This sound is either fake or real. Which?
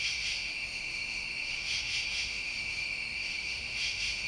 fake